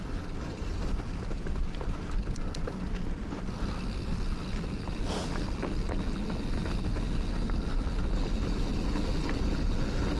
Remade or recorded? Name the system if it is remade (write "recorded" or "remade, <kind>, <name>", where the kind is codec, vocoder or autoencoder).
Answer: recorded